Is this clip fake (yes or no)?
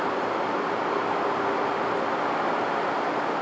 no